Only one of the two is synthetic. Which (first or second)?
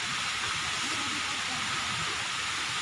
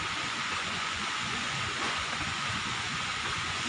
second